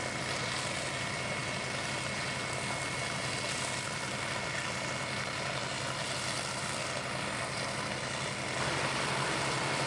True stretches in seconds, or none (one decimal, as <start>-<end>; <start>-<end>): 0.0-9.9